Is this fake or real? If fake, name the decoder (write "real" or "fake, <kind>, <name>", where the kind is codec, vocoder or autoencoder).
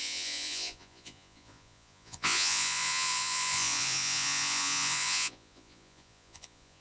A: fake, vocoder, Vocos